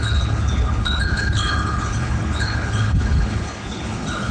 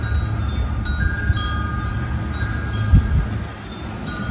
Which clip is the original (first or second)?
second